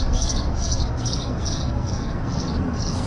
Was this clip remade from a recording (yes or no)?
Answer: yes